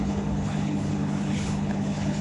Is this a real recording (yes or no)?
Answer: no